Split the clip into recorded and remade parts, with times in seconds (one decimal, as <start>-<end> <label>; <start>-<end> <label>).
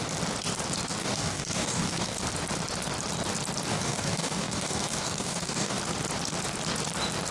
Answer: 0.0-1.0 recorded; 1.0-2.2 remade; 2.2-3.7 recorded; 3.7-5.8 remade; 5.8-7.3 recorded